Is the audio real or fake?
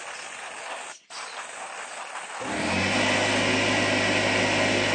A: real